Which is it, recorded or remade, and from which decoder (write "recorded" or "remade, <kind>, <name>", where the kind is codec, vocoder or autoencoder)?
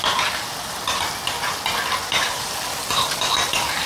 recorded